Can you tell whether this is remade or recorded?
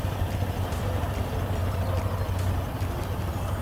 recorded